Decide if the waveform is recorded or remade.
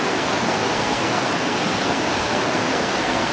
remade